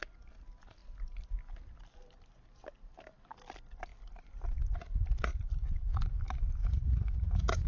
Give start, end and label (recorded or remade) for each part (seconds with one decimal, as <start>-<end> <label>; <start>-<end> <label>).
0.0-6.6 recorded; 6.6-7.7 remade